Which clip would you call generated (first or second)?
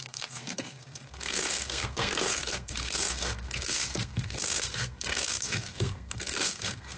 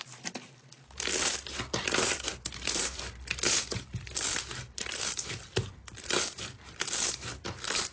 first